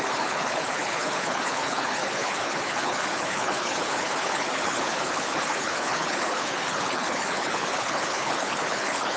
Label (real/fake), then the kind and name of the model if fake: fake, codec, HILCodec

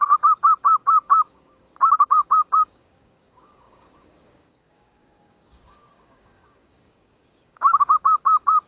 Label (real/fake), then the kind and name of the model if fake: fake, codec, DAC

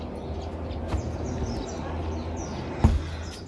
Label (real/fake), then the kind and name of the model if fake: real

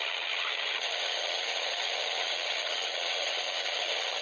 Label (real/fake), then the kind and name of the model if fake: fake, vocoder, HiFi-GAN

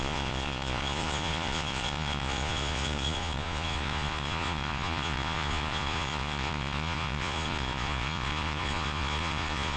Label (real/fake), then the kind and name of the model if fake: fake, vocoder, Vocos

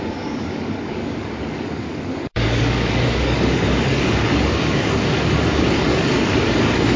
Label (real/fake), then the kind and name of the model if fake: fake, codec, DAC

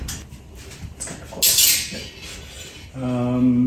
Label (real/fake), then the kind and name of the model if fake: real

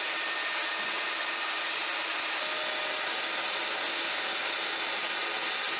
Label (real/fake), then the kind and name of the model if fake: real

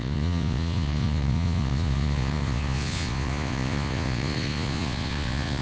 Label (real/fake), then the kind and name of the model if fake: fake, vocoder, Vocos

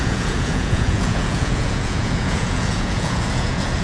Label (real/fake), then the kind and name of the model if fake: fake, vocoder, Vocos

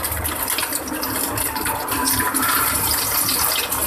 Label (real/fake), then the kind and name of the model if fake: real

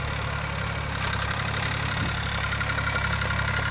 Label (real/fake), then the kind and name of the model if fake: real